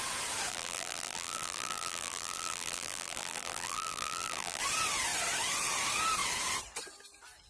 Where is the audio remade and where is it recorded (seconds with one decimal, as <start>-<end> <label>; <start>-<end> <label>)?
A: 0.0-0.5 recorded; 0.5-4.6 remade; 4.6-7.5 recorded